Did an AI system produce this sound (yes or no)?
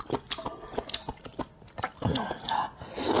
no